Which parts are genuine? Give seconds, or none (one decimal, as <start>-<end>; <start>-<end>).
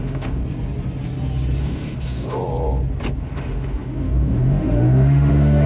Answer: 0.4-1.6; 2.4-3.2